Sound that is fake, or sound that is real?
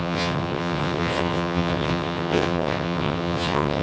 fake